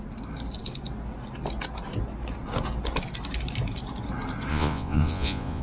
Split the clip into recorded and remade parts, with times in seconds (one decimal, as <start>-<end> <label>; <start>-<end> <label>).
0.0-4.5 recorded; 4.5-5.6 remade